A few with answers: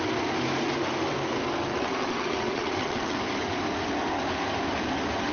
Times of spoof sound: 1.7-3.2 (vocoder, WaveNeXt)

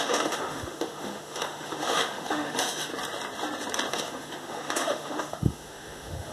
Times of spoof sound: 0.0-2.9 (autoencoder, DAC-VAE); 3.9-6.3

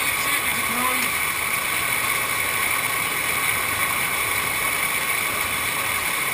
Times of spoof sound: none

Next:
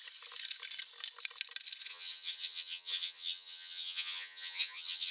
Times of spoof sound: 1.9-5.1 (vocoder, HiFi-GAN)

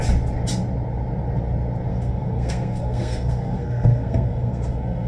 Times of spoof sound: 1.9-5.1 (codec, SNAC)

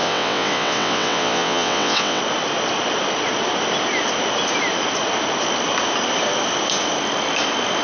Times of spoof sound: 0.0-2.2 (vocoder, WaveNeXt)